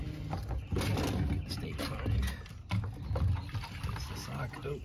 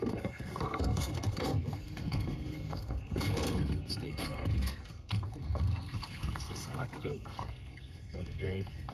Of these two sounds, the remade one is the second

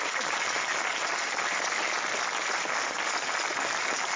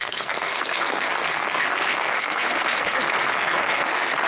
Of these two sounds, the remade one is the second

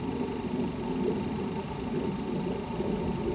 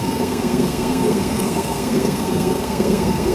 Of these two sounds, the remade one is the second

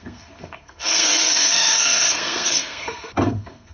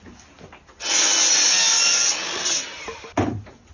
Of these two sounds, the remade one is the first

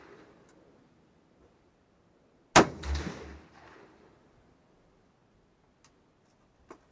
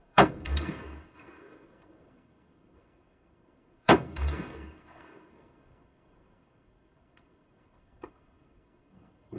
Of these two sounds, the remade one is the second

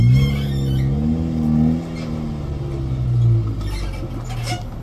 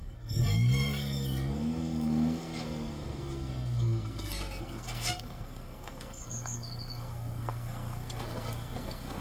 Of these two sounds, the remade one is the second